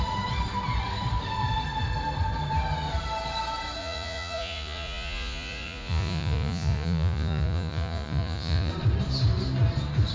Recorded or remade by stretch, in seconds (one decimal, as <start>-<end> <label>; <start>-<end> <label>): 0.0-3.8 recorded; 3.8-8.7 remade; 8.7-10.1 recorded